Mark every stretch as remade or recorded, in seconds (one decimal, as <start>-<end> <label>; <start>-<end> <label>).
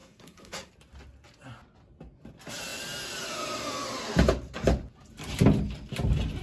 0.0-0.7 remade; 0.7-6.4 recorded